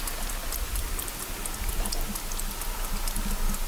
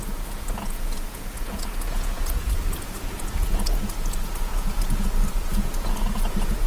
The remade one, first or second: second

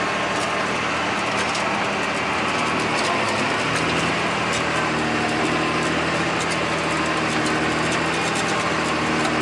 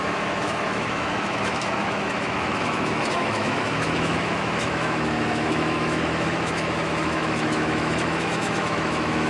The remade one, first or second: second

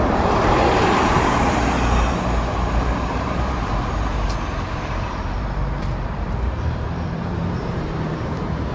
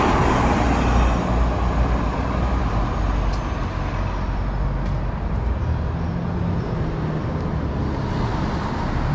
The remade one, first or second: first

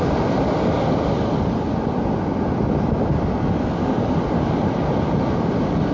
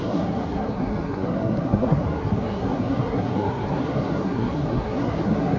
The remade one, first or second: second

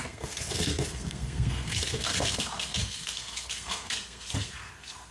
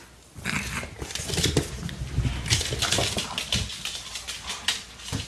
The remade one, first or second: first